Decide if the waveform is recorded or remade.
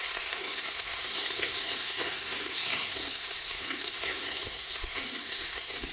remade